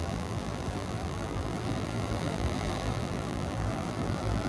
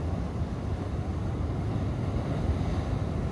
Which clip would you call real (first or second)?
second